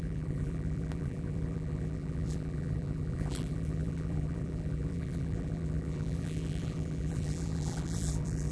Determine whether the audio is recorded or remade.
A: remade